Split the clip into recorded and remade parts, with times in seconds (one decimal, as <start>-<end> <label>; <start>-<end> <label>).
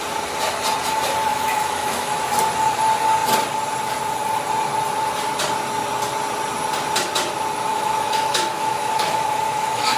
0.0-1.3 recorded; 1.3-2.2 remade; 2.2-7.7 recorded; 7.7-10.0 remade